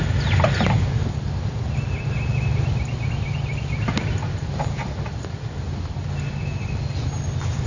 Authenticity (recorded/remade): recorded